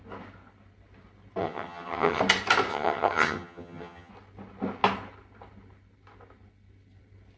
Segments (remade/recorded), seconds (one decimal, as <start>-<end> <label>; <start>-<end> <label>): 0.0-1.4 recorded; 1.4-2.2 remade; 2.2-2.7 recorded; 2.7-4.1 remade; 4.1-7.4 recorded